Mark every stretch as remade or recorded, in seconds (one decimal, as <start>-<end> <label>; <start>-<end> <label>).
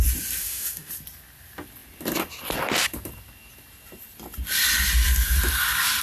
0.0-0.4 recorded; 0.4-0.9 remade; 0.9-6.0 recorded